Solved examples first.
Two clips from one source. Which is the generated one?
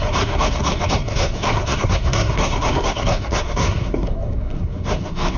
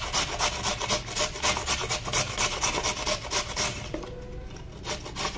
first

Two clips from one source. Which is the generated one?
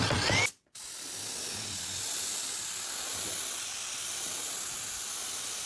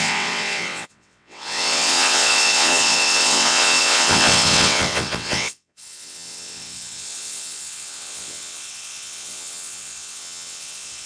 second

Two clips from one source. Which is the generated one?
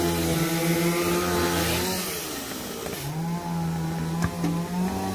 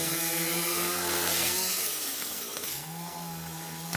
second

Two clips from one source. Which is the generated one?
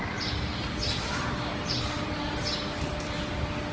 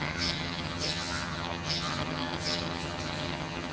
second